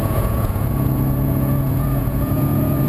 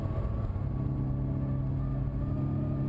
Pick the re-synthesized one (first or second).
first